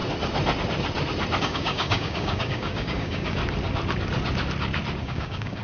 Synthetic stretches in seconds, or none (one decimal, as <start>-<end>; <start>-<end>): 1.4-3.4; 5.0-5.6